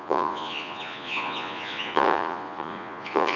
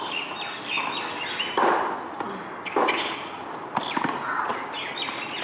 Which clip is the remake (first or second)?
first